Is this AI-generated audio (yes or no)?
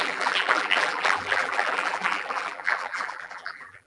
yes